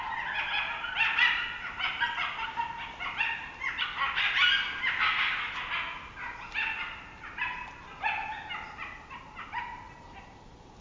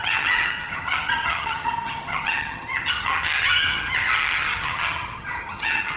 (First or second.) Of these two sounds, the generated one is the second